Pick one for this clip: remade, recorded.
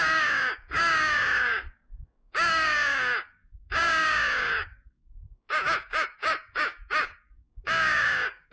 remade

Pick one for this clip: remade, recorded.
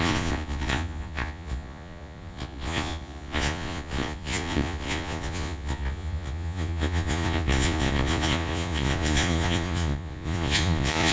remade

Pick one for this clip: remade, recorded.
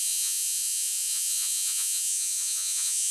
remade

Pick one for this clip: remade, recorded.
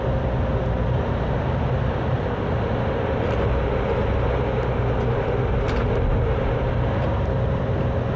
recorded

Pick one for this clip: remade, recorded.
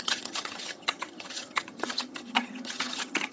remade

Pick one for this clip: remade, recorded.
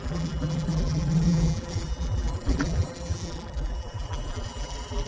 remade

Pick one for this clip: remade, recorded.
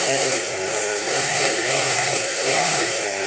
remade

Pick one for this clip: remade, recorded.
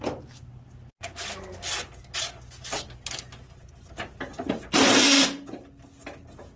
recorded